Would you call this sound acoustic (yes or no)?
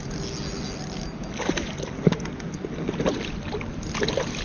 yes